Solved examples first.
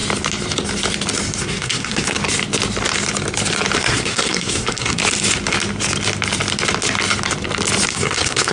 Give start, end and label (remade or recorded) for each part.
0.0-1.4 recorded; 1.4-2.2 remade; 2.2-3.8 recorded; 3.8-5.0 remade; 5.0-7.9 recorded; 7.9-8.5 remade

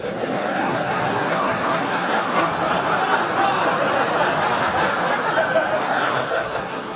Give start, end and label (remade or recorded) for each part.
0.0-2.5 remade; 2.5-5.8 recorded; 5.8-7.0 remade

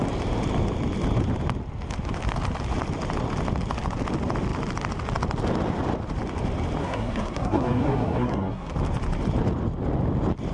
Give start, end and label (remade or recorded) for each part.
0.0-6.8 recorded; 6.8-8.7 remade; 8.7-10.5 recorded

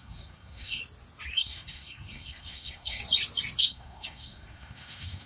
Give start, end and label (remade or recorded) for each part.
0.0-0.8 remade; 0.8-1.3 recorded; 1.3-3.0 remade; 3.0-3.6 recorded; 3.6-5.3 remade

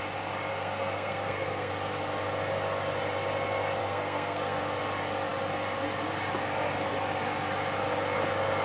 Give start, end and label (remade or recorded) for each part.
0.0-0.5 recorded; 0.5-1.7 remade; 1.7-3.8 recorded; 3.8-4.6 remade; 4.6-8.6 recorded